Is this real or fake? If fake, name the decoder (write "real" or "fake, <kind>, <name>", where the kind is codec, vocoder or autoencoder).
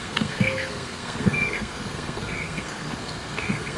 fake, codec, SNAC